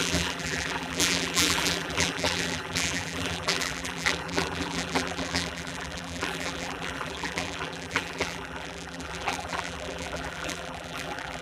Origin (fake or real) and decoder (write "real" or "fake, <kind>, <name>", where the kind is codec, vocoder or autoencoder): fake, vocoder, BigVGAN v2